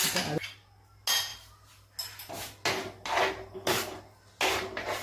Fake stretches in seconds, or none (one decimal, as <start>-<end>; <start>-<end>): none